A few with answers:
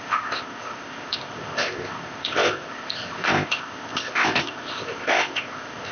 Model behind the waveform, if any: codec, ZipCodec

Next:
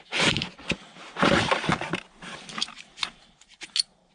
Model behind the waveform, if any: none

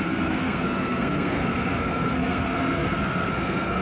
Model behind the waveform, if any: codec, SNAC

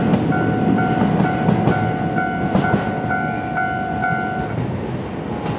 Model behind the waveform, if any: none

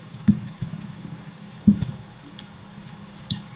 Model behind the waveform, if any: codec, DAC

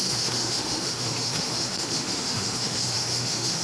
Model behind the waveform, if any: autoencoder, DAC-VAE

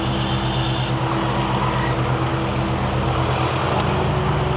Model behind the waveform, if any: none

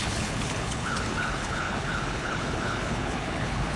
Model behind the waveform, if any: codec, HILCodec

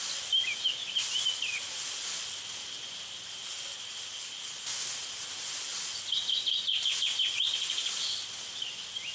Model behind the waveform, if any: none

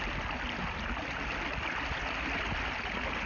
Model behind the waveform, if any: none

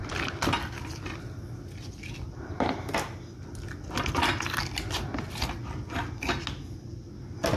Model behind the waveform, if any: none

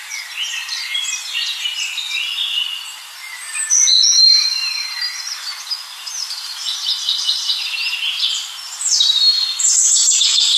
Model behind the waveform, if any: vocoder, BigVGAN v2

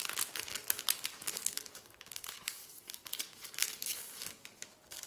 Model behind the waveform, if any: codec, DAC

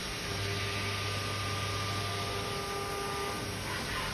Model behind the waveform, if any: none